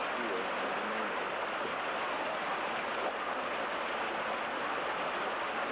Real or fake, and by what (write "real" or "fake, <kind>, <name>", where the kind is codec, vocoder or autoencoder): real